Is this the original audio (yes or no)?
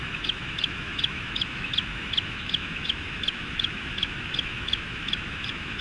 no